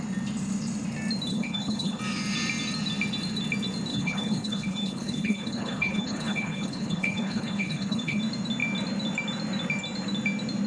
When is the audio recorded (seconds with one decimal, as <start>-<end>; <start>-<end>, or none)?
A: 0.0-1.3; 2.0-3.9; 8.2-10.7